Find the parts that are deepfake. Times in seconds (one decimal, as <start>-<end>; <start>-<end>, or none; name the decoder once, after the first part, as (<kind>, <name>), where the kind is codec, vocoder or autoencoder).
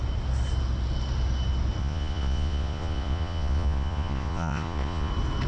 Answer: 1.8-5.1 (vocoder, Vocos)